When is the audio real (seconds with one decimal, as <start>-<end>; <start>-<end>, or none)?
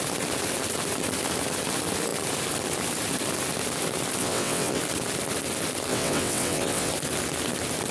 0.0-4.2; 4.8-5.9; 6.9-7.9